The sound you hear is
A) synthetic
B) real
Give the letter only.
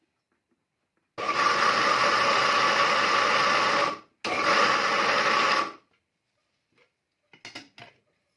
B